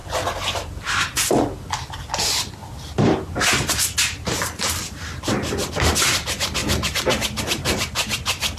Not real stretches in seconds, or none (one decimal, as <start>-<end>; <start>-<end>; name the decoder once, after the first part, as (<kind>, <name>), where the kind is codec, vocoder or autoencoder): 0.0-0.8 (vocoder, BigVGAN v2)